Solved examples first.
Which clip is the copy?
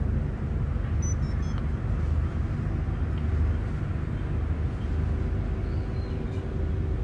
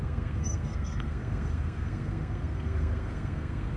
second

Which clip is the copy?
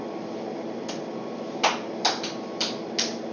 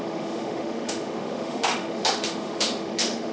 second